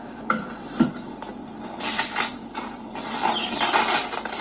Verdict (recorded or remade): recorded